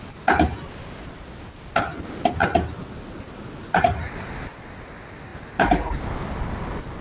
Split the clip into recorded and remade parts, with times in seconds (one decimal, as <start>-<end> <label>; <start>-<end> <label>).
0.0-7.0 recorded